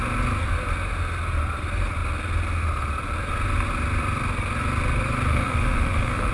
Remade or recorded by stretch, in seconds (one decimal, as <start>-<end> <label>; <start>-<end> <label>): 0.0-5.3 recorded; 5.3-6.3 remade